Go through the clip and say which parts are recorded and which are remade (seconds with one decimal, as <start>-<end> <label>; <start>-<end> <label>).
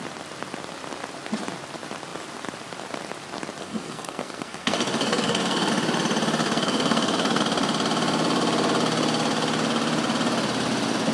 0.0-3.6 recorded; 3.6-5.7 remade; 5.7-6.4 recorded; 6.4-7.4 remade; 7.4-11.1 recorded